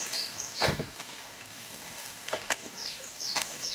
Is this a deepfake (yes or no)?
yes